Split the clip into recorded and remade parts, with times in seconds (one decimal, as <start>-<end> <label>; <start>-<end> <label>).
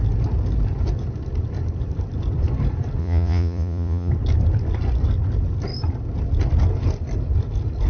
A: 0.0-3.0 recorded; 3.0-4.1 remade; 4.1-7.9 recorded